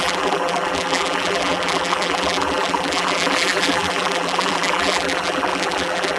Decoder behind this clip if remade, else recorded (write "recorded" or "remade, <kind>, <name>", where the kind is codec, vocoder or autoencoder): remade, vocoder, BigVGAN v2